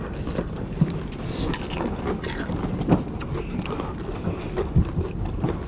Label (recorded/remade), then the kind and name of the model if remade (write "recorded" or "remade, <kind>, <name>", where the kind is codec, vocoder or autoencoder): recorded